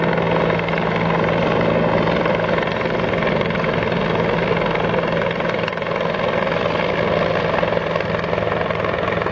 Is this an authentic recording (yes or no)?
yes